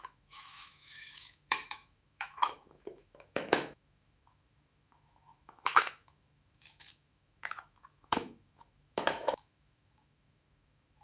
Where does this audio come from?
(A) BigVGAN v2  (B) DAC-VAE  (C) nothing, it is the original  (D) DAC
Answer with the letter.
B